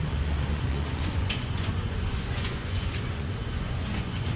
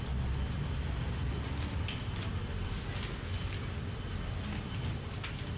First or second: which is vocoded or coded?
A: first